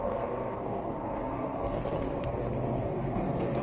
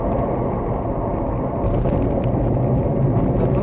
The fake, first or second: first